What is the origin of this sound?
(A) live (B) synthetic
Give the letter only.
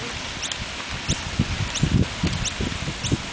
A